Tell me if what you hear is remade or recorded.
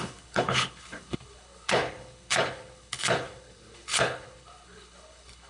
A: remade